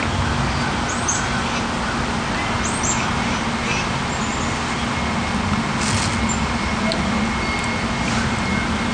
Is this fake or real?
real